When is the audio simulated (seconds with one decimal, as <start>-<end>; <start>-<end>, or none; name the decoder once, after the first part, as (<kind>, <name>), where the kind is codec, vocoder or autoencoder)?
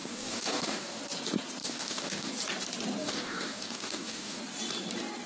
0.0-1.0 (codec, DAC); 1.6-2.3; 3.0-4.4